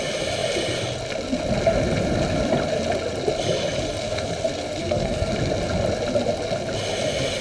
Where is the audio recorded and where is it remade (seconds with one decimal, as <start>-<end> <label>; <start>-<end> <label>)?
0.0-4.8 recorded; 4.8-5.3 remade; 5.3-7.4 recorded